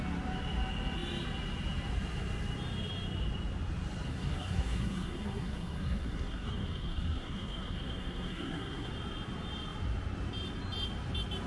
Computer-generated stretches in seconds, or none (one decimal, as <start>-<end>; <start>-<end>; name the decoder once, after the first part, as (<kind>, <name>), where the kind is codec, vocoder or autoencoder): 4.1-8.9 (codec, SNAC)

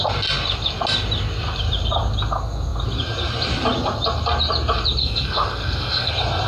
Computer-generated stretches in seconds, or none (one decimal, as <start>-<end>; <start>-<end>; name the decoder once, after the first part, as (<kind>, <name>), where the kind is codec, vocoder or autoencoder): 5.0-6.1 (codec, SNAC)

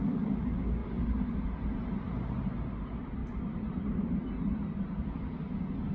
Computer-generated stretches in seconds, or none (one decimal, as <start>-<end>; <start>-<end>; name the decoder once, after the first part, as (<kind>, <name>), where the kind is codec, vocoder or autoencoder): none

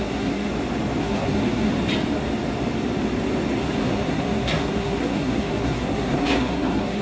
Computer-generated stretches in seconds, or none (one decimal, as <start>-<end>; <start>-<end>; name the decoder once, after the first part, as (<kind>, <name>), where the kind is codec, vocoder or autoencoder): 0.0-0.5 (codec, SNAC); 1.0-1.7; 3.6-7.0

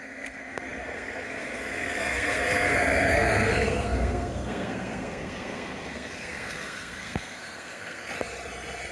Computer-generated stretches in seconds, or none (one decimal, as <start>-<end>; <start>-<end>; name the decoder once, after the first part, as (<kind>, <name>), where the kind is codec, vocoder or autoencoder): 0.0-8.1 (codec, SNAC)

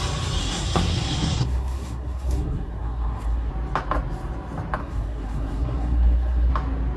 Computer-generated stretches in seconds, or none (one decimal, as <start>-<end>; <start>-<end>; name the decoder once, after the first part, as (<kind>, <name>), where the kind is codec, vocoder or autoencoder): 0.4-3.5 (codec, SNAC); 4.8-6.5